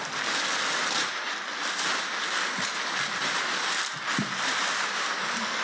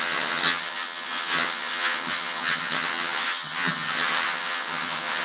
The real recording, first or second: first